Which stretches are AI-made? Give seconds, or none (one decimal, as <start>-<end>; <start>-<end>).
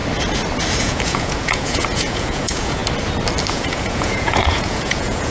0.8-2.8; 3.5-5.3